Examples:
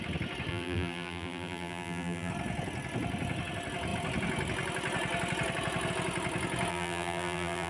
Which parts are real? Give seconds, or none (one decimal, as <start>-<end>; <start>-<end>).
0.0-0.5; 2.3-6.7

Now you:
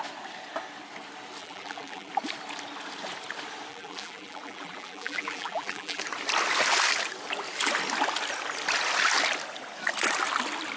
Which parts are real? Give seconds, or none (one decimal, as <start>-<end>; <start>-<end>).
0.0-1.4; 2.1-3.7; 6.0-10.8

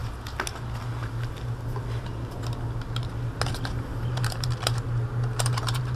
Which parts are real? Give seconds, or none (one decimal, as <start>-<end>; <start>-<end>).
0.0-3.5

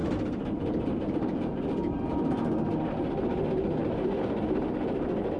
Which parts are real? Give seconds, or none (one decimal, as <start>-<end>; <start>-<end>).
2.9-5.4

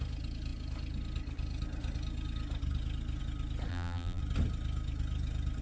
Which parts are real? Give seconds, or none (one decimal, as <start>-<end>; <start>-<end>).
0.0-3.7; 4.2-5.6

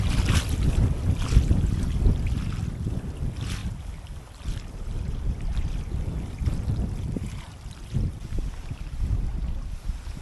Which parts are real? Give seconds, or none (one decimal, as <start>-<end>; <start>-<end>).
0.0-3.6; 8.1-10.2